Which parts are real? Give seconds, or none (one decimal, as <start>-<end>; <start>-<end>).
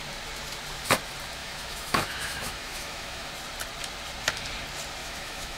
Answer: 0.0-1.4; 3.3-5.0